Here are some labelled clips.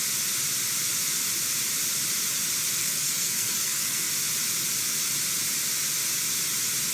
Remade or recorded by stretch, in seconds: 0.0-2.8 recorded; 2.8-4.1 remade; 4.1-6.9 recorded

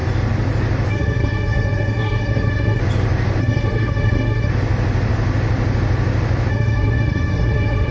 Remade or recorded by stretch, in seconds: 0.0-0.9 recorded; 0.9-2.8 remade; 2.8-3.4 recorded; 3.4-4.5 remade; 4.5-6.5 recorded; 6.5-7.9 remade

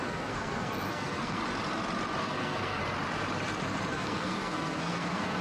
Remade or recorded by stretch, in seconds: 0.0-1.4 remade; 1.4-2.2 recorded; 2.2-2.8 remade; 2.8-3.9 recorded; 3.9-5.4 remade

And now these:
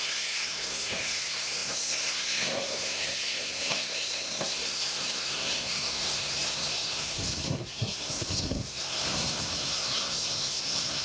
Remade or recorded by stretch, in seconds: 0.0-11.0 remade